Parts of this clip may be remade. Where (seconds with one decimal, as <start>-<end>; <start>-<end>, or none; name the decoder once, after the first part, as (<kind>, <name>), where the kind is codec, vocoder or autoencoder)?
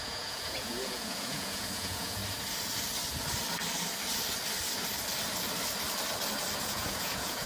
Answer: 0.0-2.2 (vocoder, Vocos); 6.6-7.5